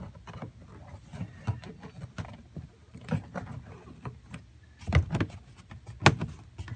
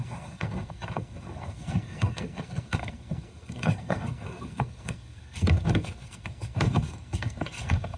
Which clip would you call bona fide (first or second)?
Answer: first